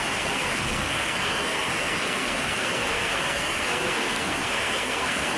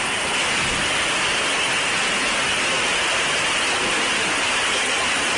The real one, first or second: second